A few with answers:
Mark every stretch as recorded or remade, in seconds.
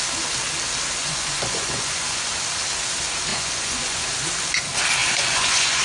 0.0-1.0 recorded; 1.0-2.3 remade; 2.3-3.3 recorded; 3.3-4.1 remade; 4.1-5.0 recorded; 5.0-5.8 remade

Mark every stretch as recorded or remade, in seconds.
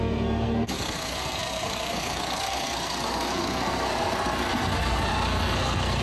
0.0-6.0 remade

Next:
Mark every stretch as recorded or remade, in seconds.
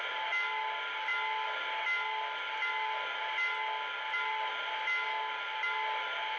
0.0-6.4 recorded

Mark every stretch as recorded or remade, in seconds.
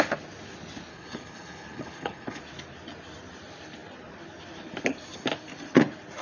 0.0-0.9 recorded; 0.9-2.4 remade; 2.4-6.2 recorded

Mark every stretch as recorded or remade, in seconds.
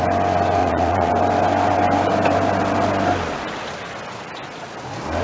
0.0-0.6 recorded; 0.6-1.1 remade; 1.1-5.2 recorded